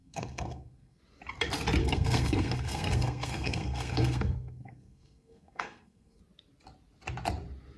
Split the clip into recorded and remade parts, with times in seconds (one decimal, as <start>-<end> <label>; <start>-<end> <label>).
0.0-1.0 remade; 1.0-1.8 recorded; 1.8-6.2 remade; 6.2-7.8 recorded